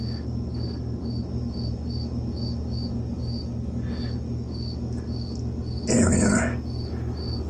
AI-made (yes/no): no